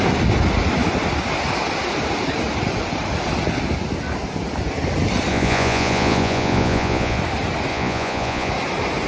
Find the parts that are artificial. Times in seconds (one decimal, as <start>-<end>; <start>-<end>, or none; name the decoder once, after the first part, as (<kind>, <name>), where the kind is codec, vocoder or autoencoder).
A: 5.3-7.2 (vocoder, Vocos); 7.7-8.5